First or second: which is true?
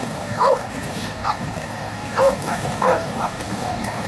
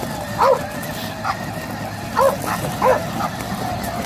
second